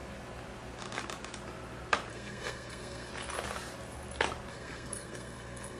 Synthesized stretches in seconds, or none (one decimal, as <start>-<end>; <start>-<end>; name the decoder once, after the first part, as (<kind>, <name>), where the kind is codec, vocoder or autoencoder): 2.1-3.1 (codec, SNAC); 4.5-5.8